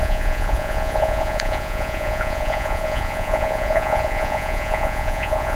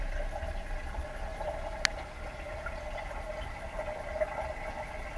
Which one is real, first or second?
second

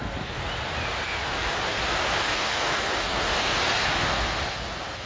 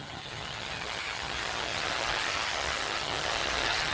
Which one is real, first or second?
first